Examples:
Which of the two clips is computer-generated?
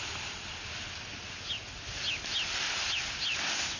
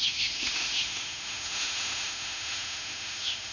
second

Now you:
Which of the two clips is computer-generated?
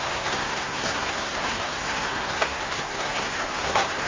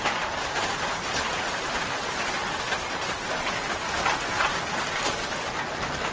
first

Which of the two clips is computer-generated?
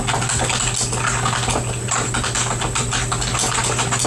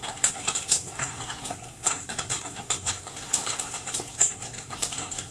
second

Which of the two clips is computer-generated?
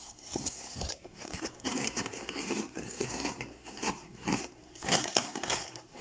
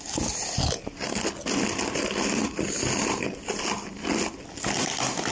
first